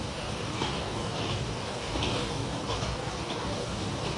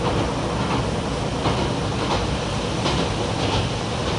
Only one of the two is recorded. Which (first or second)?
second